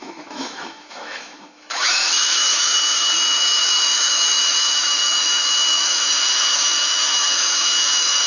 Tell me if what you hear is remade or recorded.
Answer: remade